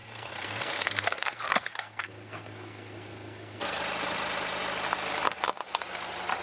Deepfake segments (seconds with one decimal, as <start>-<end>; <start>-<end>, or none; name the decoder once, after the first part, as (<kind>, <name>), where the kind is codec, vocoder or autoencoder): 0.0-3.8 (codec, SNAC)